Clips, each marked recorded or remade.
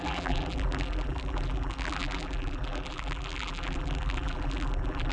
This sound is remade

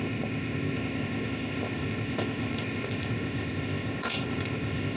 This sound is remade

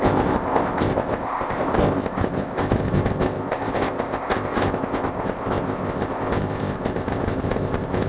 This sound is remade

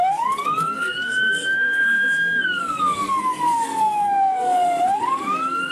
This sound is remade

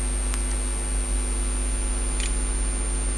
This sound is recorded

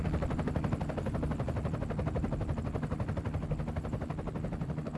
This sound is recorded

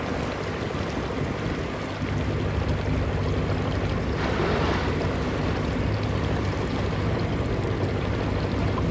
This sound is recorded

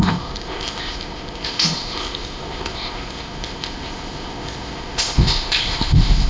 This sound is remade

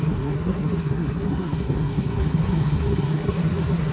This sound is remade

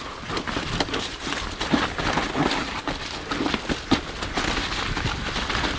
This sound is recorded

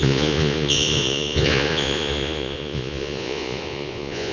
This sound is remade